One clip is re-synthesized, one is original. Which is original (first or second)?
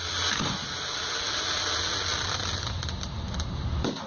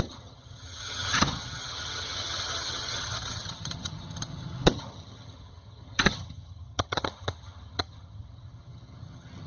first